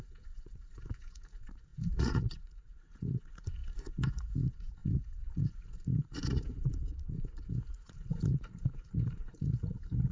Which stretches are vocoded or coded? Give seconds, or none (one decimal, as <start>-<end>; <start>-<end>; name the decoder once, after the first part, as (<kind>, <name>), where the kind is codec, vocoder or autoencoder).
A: 0.0-10.1 (vocoder, Vocos)